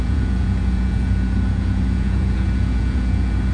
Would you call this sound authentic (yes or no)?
no